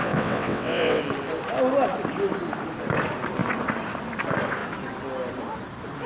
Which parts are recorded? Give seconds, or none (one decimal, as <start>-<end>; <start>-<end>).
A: 1.0-6.1